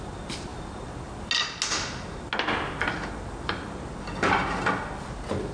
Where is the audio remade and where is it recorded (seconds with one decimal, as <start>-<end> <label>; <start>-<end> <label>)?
0.0-5.5 recorded